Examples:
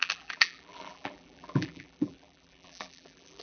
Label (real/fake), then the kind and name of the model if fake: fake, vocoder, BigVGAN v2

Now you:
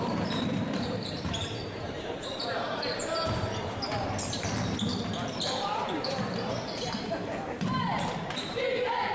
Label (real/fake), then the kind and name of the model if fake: fake, vocoder, BigVGAN v2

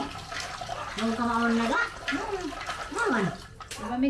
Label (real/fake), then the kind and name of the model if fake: real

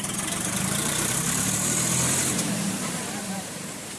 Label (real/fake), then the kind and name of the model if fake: fake, vocoder, BigVGAN v2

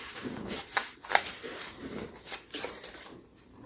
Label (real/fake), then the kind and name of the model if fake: fake, vocoder, BigVGAN v2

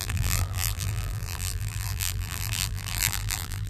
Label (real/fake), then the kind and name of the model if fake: fake, vocoder, BigVGAN v2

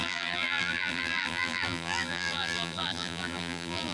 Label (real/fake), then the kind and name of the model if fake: fake, vocoder, BigVGAN v2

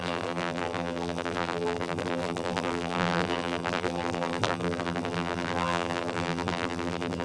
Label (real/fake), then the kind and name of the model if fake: fake, vocoder, BigVGAN v2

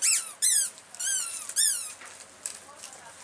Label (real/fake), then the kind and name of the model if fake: real